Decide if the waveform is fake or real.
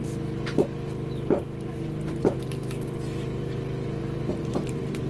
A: fake